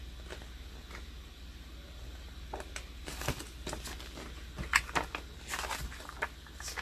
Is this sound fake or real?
real